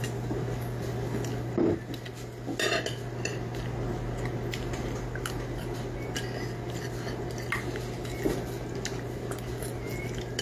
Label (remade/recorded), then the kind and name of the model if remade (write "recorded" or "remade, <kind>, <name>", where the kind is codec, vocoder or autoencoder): recorded